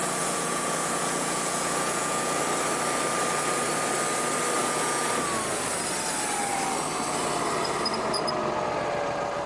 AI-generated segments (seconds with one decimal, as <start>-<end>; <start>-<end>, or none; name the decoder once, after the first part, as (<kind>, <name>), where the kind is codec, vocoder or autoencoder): 0.0-2.4 (vocoder, Vocos); 4.6-5.1